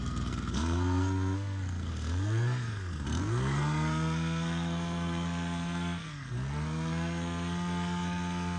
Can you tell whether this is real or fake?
fake